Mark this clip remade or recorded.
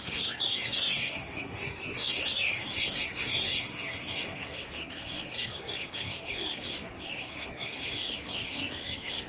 remade